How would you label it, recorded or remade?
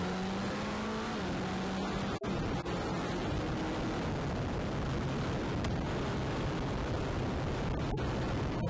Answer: recorded